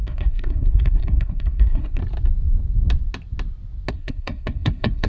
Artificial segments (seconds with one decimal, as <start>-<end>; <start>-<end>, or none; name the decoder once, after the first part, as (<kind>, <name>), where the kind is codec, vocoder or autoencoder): 0.0-2.0 (codec, SNAC); 3.9-5.1